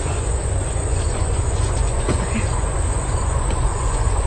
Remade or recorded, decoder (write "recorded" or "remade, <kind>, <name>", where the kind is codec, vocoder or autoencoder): remade, vocoder, Vocos